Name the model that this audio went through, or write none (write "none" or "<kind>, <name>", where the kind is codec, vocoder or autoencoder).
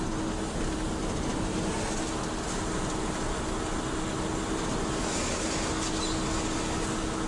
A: none